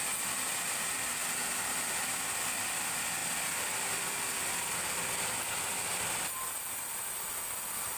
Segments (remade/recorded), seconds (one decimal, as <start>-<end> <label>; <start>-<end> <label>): 0.0-8.0 recorded